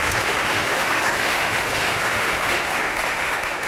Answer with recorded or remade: remade